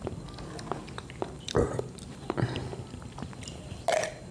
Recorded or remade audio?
recorded